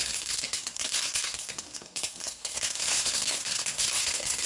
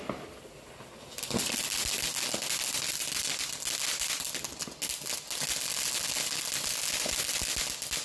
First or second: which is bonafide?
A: second